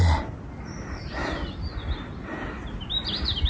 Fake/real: real